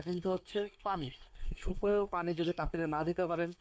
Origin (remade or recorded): remade